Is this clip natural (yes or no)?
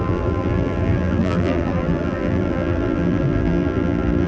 no